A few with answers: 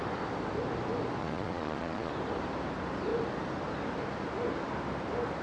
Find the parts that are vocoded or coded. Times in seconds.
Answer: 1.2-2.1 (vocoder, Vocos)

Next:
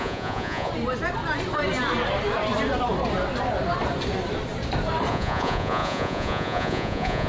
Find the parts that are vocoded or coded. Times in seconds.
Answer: 0.0-0.7 (vocoder, Vocos); 5.1-7.3

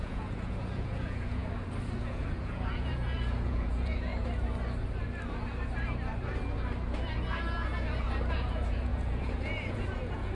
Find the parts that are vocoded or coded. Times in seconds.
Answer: 0.0-1.4 (vocoder, Vocos); 2.0-4.1; 8.3-10.3

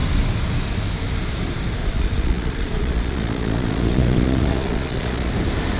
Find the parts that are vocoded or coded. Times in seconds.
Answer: 1.8-5.3 (vocoder, Vocos)

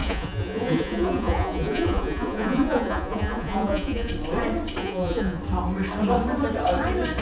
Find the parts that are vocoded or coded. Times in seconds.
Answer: 0.0-4.1 (vocoder, Vocos); 4.8-5.4

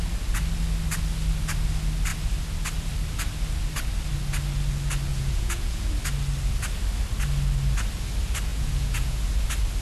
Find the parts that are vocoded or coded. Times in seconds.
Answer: 5.1-5.9 (vocoder, Vocos); 8.5-9.3

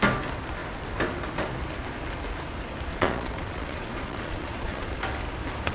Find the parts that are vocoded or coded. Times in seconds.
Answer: 2.9-4.9 (vocoder, Vocos)